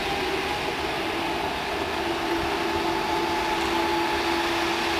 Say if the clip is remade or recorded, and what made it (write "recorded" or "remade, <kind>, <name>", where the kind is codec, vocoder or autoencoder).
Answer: recorded